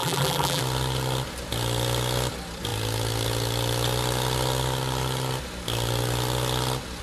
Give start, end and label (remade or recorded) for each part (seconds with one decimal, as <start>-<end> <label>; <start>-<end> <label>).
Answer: 0.0-0.6 remade; 0.6-7.0 recorded